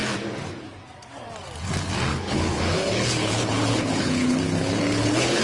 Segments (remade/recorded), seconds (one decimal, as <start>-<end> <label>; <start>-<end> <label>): 0.0-2.1 recorded; 2.1-5.4 remade